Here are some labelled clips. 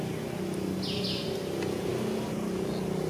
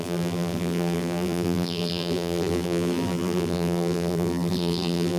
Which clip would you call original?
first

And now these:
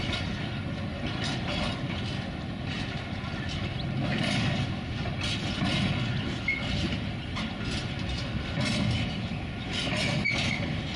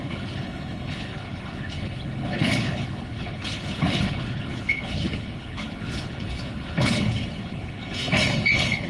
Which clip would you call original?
first